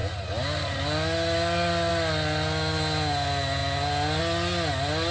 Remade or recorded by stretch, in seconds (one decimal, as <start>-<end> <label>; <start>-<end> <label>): 0.0-5.1 recorded